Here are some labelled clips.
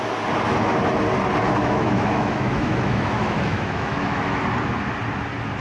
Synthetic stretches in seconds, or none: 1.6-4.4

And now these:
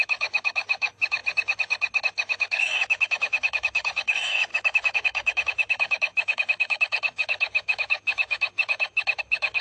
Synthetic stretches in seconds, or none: 0.0-1.2; 2.0-9.6

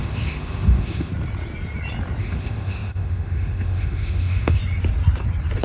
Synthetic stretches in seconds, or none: 0.0-1.1; 2.2-4.6

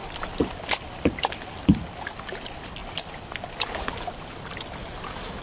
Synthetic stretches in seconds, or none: none

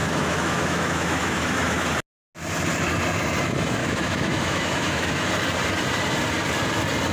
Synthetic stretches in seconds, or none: 0.0-1.9; 3.8-5.3

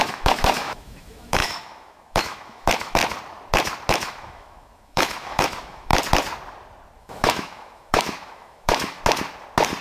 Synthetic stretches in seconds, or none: 0.0-3.0; 3.9-5.9; 7.0-9.0

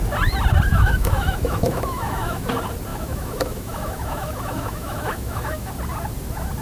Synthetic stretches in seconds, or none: 0.7-2.5; 2.9-5.7